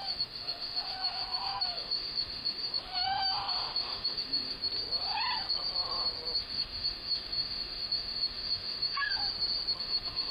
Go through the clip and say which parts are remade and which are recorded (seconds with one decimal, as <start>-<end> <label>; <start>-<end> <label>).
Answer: 0.0-4.6 remade; 4.6-6.4 recorded; 6.4-9.2 remade; 9.2-9.8 recorded; 9.8-10.3 remade